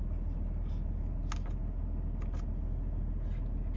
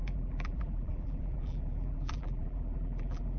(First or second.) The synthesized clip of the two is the second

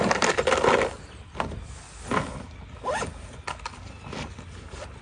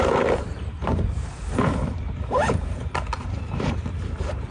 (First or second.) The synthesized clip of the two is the second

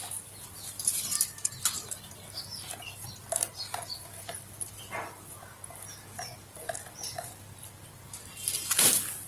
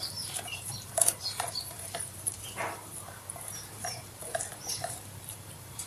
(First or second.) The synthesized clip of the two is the second